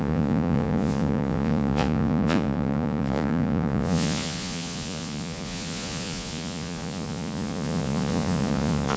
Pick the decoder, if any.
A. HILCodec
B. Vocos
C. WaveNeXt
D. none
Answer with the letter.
B